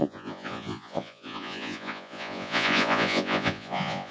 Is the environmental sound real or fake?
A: fake